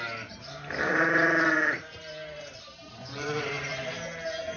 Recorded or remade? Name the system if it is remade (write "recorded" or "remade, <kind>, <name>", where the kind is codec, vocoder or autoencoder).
remade, vocoder, BigVGAN v2